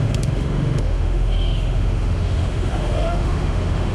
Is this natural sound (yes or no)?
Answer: no